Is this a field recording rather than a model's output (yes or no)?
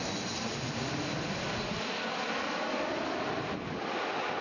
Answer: yes